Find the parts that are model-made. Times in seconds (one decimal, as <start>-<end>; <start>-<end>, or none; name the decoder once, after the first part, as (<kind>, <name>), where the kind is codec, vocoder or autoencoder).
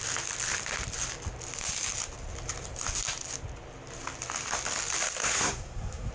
5.2-6.1 (codec, SNAC)